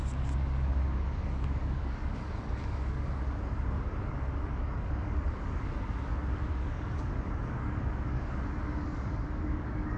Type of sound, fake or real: fake